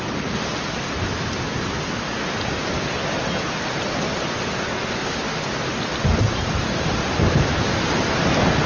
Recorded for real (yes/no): yes